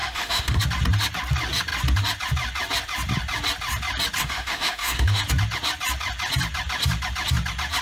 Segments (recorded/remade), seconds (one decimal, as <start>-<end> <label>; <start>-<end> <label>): 0.0-0.6 remade; 0.6-4.2 recorded; 4.2-5.2 remade; 5.2-7.8 recorded